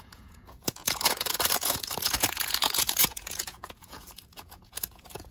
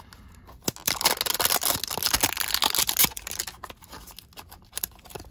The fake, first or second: first